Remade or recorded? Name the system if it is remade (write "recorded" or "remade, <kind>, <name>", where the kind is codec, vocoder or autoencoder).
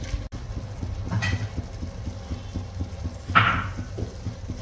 recorded